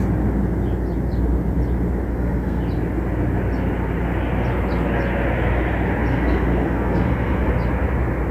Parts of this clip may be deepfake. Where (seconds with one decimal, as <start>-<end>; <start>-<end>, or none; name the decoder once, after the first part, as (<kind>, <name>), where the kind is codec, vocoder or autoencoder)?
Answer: 2.1-2.6 (codec, SNAC); 6.1-7.5